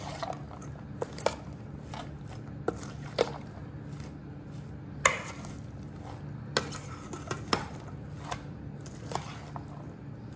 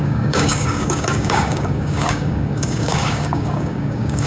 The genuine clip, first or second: first